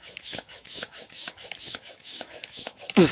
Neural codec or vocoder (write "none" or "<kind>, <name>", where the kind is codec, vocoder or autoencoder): autoencoder, DAC-VAE